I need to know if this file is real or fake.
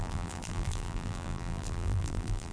fake